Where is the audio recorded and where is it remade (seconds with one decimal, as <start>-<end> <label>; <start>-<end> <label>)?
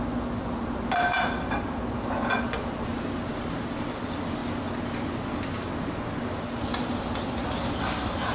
0.0-8.3 recorded